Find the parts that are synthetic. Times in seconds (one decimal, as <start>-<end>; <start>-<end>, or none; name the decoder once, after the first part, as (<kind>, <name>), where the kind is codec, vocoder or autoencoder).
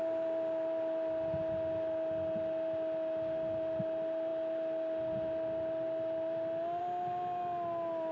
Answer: none